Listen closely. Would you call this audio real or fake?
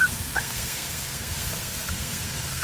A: fake